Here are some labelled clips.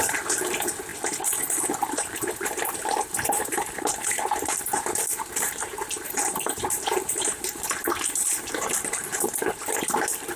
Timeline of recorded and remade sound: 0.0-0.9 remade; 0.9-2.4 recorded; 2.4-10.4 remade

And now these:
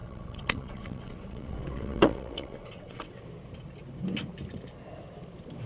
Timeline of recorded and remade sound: 0.0-3.2 remade; 3.2-5.7 recorded